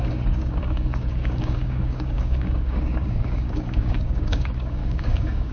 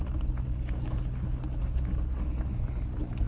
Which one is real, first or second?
second